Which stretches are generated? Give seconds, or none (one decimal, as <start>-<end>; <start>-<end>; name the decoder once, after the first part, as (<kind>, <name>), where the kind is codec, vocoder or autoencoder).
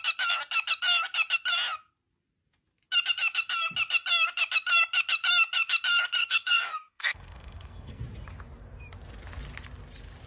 6.2-8.0 (codec, SNAC)